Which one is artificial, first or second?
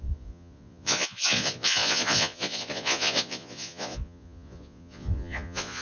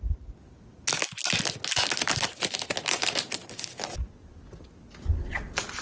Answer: first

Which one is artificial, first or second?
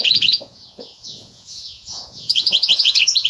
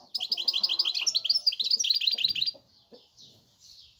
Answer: first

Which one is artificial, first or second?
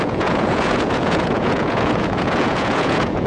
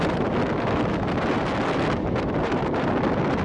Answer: first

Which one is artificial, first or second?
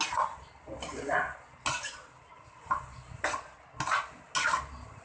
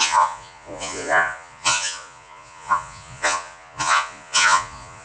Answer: second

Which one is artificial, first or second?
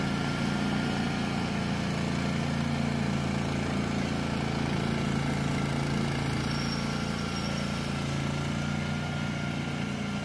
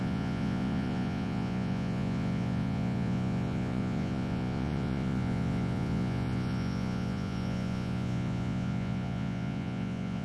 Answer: second